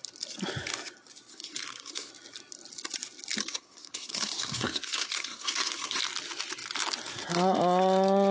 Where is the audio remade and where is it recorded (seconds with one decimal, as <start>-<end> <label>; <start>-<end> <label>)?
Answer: 0.0-1.3 recorded; 1.3-2.1 remade; 2.1-3.4 recorded; 3.4-6.0 remade; 6.0-8.3 recorded